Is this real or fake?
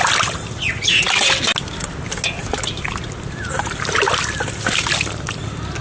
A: real